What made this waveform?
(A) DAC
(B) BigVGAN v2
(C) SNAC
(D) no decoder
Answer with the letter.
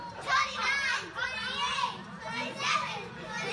D